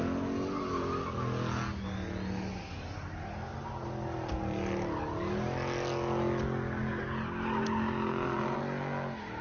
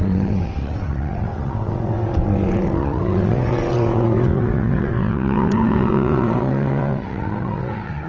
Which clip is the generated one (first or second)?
second